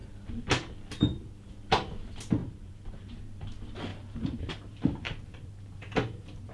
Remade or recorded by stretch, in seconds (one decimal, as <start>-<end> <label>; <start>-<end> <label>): 0.0-2.4 recorded; 2.4-3.2 remade; 3.2-3.9 recorded; 3.9-6.5 remade